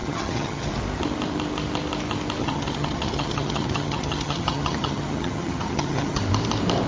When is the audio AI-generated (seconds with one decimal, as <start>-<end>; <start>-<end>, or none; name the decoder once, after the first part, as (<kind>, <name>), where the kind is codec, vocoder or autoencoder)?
0.0-0.7 (vocoder, HiFi-GAN); 2.4-6.2

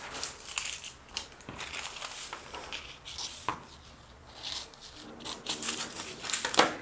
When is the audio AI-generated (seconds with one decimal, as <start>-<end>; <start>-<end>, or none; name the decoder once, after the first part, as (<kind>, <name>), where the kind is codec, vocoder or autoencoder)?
none

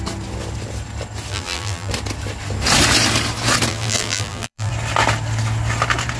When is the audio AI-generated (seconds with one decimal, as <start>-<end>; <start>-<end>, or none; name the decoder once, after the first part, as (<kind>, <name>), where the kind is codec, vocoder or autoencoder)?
1.3-1.9 (vocoder, BigVGAN v2); 3.7-4.7